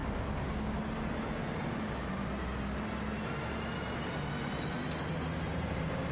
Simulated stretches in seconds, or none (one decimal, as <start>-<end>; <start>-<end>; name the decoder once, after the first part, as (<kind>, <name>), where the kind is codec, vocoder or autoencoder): 5.5-6.1 (vocoder, BigVGAN v2)